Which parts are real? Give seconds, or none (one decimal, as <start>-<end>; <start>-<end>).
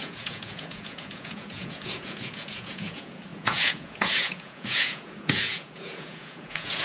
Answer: none